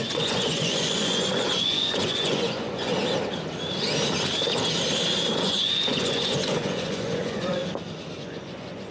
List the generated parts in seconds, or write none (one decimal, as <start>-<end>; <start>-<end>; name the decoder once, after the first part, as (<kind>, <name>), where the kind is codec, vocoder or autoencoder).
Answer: 0.0-2.9 (vocoder, Vocos); 5.4-7.6; 8.2-8.9

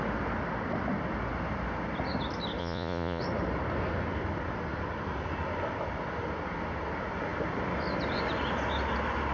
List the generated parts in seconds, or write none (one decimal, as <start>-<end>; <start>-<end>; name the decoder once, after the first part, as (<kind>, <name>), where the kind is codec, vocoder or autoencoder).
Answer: 2.6-3.2 (vocoder, Vocos)